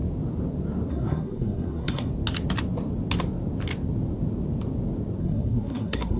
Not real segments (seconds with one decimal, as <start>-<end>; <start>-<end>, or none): 0.9-2.1; 5.2-6.2